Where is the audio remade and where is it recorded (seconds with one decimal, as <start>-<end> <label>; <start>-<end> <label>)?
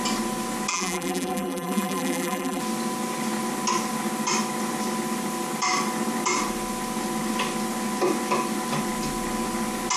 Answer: 0.0-0.7 recorded; 0.7-2.6 remade; 2.6-10.0 recorded